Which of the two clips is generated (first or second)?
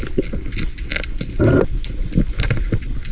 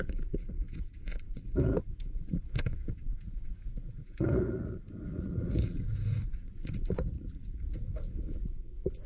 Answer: second